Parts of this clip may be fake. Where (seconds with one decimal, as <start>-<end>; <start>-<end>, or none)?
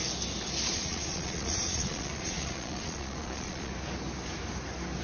0.7-3.7